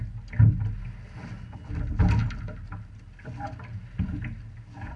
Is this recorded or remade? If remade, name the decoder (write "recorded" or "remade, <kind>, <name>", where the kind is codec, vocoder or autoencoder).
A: recorded